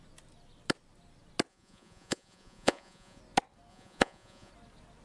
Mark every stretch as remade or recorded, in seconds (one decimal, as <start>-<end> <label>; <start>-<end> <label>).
0.0-1.5 recorded; 1.5-3.2 remade; 3.2-3.7 recorded; 3.7-4.5 remade; 4.5-5.0 recorded